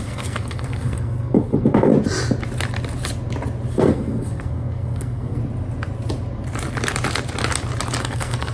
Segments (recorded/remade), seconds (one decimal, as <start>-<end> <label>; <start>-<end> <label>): 0.0-1.9 remade; 1.9-3.7 recorded; 3.7-5.4 remade; 5.4-8.0 recorded; 8.0-8.5 remade